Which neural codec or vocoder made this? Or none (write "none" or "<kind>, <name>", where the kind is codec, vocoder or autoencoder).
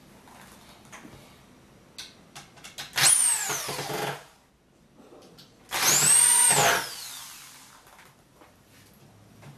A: none